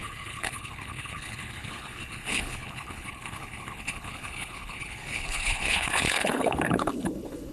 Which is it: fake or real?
fake